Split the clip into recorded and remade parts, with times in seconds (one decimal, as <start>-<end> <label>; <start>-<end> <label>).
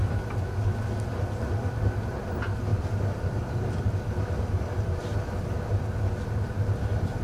0.0-2.7 recorded; 2.7-3.8 remade; 3.8-7.2 recorded